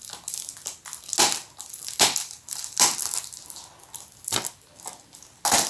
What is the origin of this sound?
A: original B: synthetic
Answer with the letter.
A